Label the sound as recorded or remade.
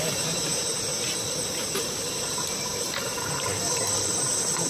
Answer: remade